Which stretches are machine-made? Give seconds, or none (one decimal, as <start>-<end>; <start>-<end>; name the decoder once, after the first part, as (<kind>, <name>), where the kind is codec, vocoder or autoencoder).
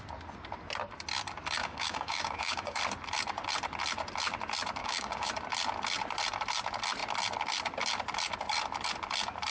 1.6-2.8 (codec, DAC); 4.8-5.3